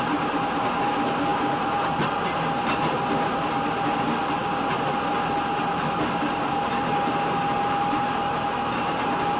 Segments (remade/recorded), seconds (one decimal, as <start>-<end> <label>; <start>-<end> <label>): 0.0-9.4 recorded